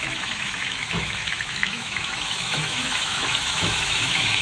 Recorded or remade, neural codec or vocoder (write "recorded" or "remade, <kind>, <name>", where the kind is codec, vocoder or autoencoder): remade, autoencoder, DAC-VAE